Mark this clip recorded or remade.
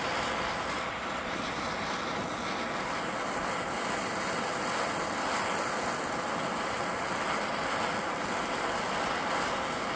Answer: recorded